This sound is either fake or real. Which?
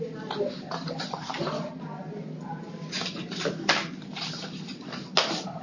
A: real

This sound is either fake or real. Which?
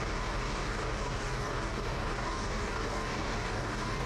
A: fake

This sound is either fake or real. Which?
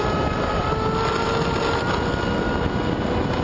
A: real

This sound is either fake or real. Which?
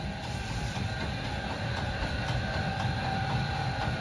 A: real